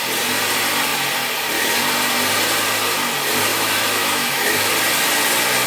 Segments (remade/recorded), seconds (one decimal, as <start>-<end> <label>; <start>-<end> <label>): 0.0-3.5 recorded; 3.5-4.7 remade; 4.7-5.7 recorded